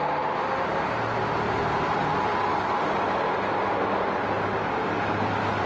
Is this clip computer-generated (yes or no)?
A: no